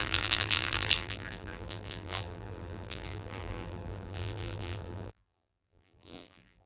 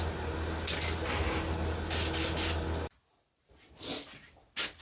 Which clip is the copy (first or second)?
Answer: first